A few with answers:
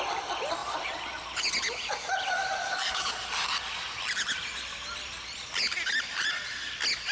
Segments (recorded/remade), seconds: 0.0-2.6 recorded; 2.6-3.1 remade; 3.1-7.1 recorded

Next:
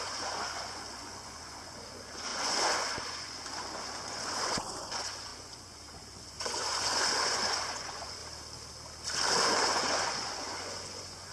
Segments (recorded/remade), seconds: 0.0-8.2 remade; 8.2-9.4 recorded; 9.4-11.3 remade